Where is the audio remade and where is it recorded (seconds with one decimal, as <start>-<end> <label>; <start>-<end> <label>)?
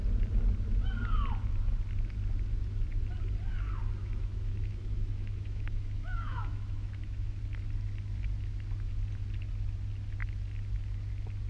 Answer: 0.0-4.0 recorded; 4.0-7.4 remade; 7.4-11.5 recorded